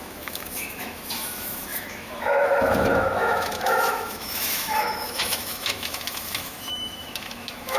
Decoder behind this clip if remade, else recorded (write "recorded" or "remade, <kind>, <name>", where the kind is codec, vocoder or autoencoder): remade, autoencoder, DAC-VAE